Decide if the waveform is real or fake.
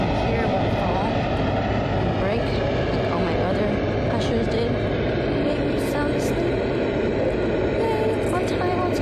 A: real